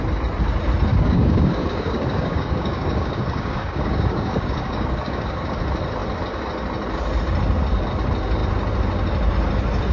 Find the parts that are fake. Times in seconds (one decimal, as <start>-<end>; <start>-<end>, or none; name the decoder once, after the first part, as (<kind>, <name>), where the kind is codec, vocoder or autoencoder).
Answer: 0.9-5.6 (codec, DAC)